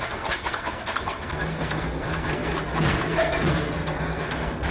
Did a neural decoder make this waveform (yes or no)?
yes